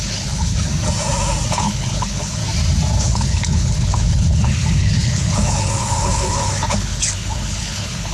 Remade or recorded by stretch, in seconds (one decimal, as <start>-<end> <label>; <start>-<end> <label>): 0.0-0.7 remade; 0.7-1.5 recorded; 1.5-2.4 remade; 2.4-3.0 recorded; 3.0-8.1 remade